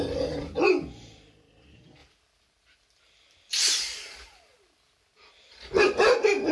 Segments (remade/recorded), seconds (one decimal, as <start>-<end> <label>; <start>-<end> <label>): 0.0-6.5 remade